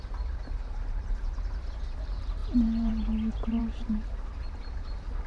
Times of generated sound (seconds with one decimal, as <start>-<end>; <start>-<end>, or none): 2.4-3.0; 3.6-4.6